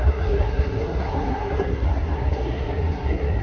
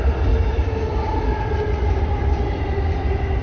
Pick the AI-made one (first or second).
first